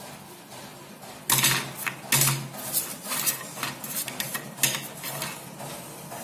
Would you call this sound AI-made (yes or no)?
no